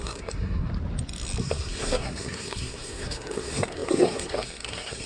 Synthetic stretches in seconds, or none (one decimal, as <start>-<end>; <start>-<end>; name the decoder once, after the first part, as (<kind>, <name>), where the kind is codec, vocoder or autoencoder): 0.0-0.7 (codec, SNAC); 1.4-5.1